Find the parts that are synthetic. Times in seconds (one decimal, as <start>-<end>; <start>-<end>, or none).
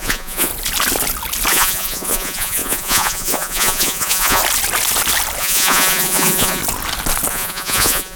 0.0-0.5; 1.5-4.4; 5.4-6.6; 7.3-8.2